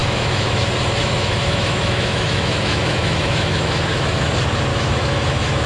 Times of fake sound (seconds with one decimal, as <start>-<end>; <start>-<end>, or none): 0.0-0.6; 1.0-4.3; 4.7-5.7